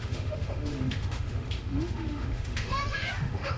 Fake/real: fake